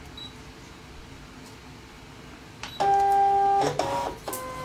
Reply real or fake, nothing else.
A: real